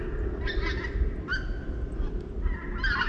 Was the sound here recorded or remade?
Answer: recorded